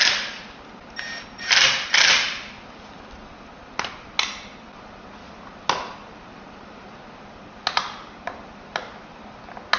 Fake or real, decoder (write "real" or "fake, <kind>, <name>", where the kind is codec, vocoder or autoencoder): real